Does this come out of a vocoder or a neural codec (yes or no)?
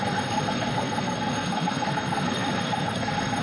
yes